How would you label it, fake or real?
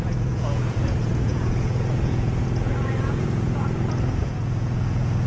fake